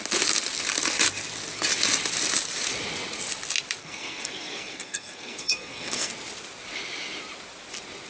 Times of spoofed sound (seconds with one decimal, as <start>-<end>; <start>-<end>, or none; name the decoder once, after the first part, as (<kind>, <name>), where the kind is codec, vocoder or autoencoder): 3.8-6.1 (codec, SNAC)